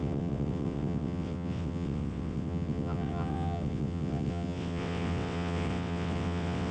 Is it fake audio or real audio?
fake